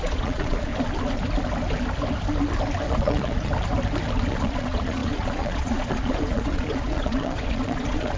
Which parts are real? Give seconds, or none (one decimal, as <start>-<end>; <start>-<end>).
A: 0.7-2.9; 3.5-4.3